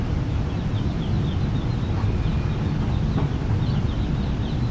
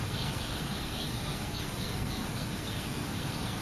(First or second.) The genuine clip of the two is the first